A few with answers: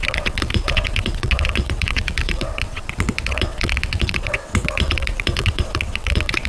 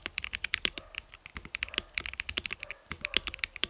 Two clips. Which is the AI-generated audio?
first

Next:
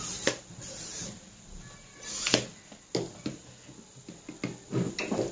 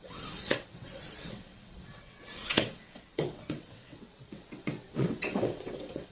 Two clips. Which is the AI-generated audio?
second